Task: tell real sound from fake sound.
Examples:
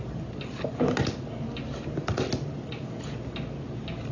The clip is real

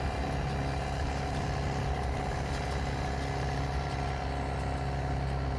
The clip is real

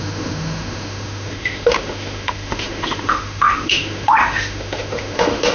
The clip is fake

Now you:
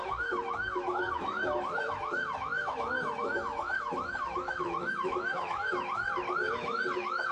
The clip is fake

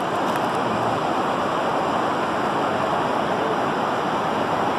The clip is real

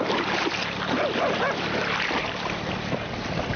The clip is real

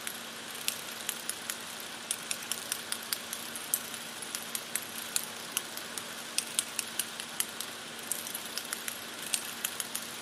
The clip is real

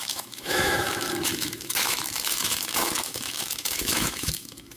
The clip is fake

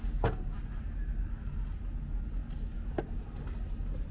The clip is real